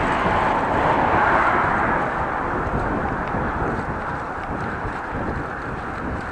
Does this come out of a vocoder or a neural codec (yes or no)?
no